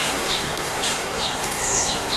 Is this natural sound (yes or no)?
no